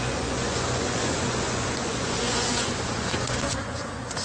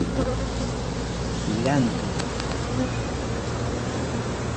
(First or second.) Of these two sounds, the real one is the second